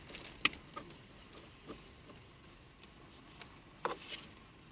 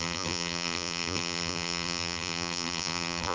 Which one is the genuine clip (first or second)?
first